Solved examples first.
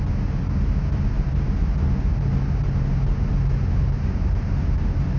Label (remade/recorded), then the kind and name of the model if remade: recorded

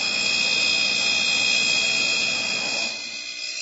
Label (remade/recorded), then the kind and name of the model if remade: recorded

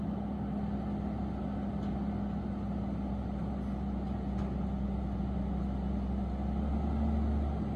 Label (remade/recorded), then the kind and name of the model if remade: recorded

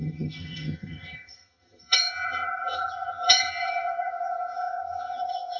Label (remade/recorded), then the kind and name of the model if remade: remade, vocoder, HiFi-GAN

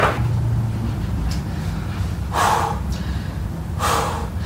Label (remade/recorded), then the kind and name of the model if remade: recorded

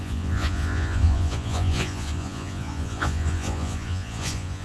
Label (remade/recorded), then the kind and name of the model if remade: remade, vocoder, Vocos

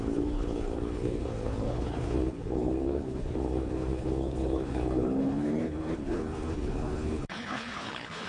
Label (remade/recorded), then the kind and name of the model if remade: remade, codec, HILCodec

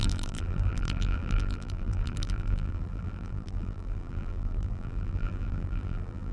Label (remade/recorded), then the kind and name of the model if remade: remade, vocoder, BigVGAN v2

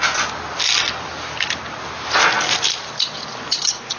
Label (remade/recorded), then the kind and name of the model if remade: recorded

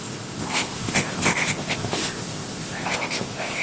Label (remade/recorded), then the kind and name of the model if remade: remade, codec, ZipCodec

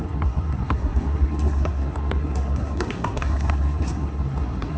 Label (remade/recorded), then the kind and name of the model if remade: remade, codec, SNAC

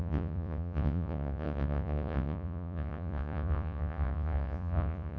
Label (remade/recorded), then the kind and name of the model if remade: remade, vocoder, Vocos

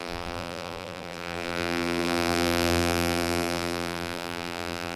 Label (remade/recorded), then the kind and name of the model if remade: remade, vocoder, BigVGAN v2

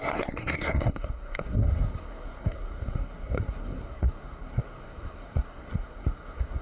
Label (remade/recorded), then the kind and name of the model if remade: remade, codec, SNAC